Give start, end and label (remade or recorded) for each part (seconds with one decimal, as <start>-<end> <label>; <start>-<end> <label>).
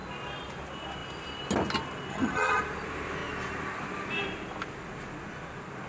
0.0-2.1 recorded; 2.1-2.6 remade; 2.6-5.9 recorded